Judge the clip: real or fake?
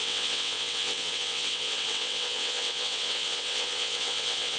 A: fake